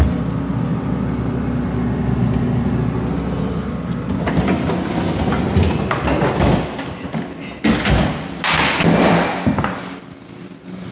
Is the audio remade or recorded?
recorded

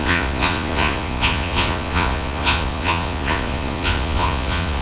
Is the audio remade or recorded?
remade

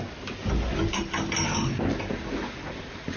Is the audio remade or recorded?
recorded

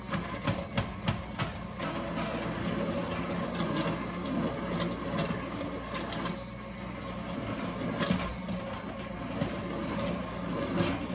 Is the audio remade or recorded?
recorded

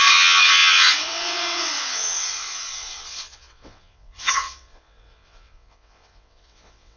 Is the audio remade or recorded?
remade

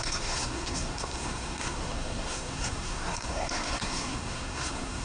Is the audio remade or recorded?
remade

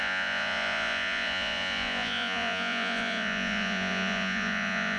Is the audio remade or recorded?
remade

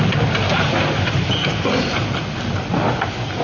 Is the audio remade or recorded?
recorded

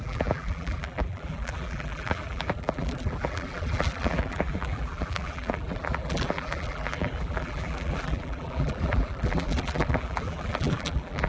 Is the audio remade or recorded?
remade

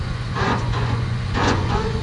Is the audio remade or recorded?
remade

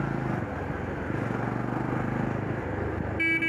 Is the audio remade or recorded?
recorded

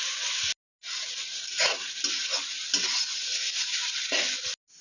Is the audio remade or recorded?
recorded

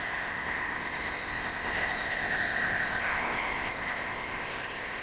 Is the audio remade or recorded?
remade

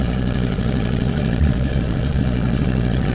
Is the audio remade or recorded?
remade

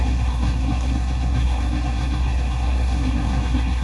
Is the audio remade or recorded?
remade